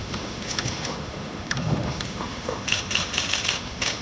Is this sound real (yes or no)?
no